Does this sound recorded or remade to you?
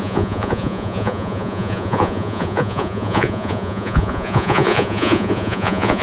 remade